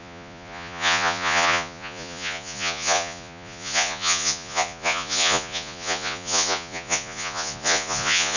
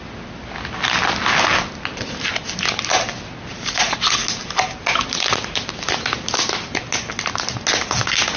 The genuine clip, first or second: second